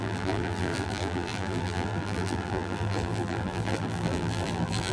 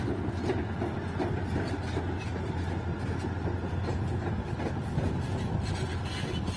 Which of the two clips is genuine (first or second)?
second